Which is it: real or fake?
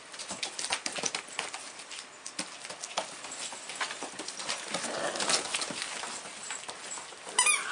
real